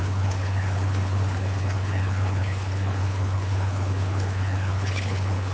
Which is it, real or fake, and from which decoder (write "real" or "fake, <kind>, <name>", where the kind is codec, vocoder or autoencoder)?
fake, codec, HILCodec